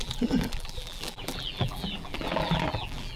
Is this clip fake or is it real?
fake